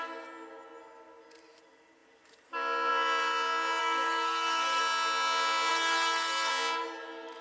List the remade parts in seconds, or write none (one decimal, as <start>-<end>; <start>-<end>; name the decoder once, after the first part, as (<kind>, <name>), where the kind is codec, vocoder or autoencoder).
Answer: 3.8-4.8 (codec, SNAC); 5.7-6.5